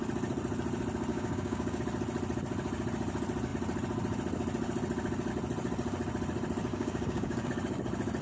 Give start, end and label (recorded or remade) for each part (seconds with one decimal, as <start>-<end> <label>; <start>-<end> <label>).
0.0-1.1 recorded; 1.1-1.8 remade; 1.8-6.7 recorded; 6.7-7.5 remade; 7.5-8.2 recorded